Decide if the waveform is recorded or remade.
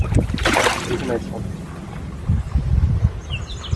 recorded